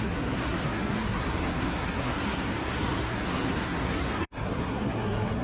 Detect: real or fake fake